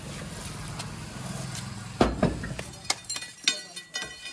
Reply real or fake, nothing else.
real